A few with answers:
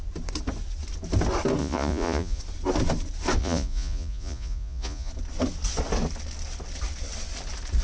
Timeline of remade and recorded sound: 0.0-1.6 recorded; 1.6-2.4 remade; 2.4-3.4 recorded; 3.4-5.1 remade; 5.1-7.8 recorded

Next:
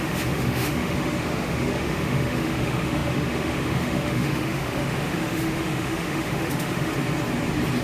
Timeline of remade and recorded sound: 0.0-6.9 remade; 6.9-7.8 recorded